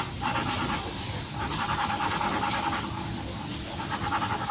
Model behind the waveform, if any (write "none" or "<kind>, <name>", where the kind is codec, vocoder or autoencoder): none